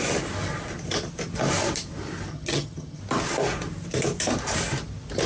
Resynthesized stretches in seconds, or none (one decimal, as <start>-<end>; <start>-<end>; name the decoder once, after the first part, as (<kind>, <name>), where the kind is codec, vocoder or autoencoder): 2.3-3.0 (vocoder, HiFi-GAN)